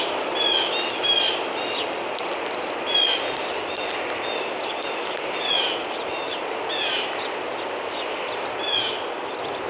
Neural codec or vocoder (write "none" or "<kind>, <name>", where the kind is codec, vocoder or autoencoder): none